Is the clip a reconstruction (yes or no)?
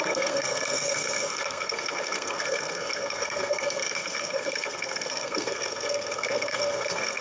yes